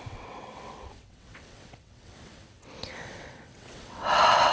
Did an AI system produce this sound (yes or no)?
yes